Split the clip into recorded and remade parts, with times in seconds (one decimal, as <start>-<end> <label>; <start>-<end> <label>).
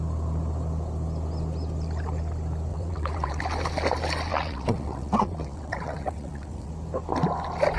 0.0-2.7 recorded; 2.7-3.4 remade; 3.4-4.3 recorded; 4.3-6.7 remade; 6.7-7.8 recorded